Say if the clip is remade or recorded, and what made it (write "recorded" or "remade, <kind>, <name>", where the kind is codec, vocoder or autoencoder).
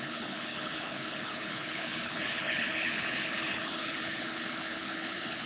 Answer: remade, codec, HILCodec